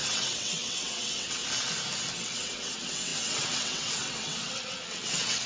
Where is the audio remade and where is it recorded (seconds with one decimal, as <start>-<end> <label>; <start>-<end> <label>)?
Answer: 0.0-1.4 remade; 1.4-2.2 recorded; 2.2-5.5 remade